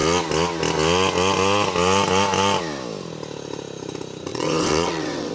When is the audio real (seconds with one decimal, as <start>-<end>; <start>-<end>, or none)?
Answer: 0.0-4.3

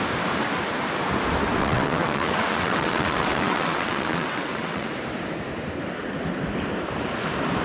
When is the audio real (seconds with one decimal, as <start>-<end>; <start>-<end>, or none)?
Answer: 0.0-1.6; 4.9-7.6

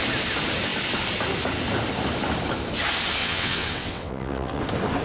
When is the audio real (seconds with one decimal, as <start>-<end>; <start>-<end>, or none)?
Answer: 0.0-3.2; 4.6-5.0

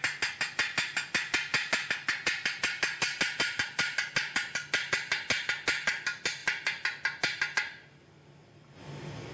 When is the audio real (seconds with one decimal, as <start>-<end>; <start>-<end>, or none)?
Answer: 0.0-9.3

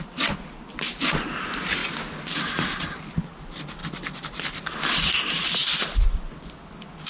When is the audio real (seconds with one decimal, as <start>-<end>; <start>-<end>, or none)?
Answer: 0.0-7.1

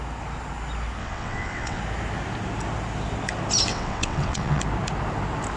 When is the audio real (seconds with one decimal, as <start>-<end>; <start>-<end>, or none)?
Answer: 0.0-1.0; 1.8-3.7; 4.6-5.6